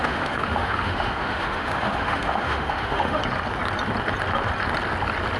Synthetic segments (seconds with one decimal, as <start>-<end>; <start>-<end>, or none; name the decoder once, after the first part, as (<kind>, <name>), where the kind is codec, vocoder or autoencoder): 0.0-3.2 (autoencoder, DAC-VAE)